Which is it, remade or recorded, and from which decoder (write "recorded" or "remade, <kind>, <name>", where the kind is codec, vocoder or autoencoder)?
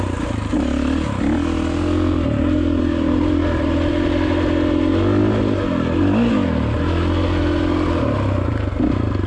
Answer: recorded